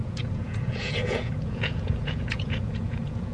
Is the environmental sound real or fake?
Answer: fake